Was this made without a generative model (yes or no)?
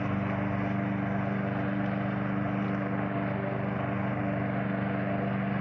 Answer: yes